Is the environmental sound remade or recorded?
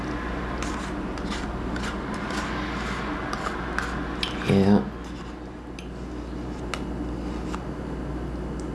recorded